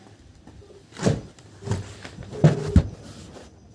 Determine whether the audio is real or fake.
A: real